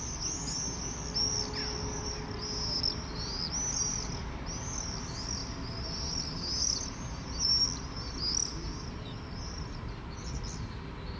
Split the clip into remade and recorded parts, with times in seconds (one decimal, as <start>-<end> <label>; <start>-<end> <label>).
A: 0.0-11.2 recorded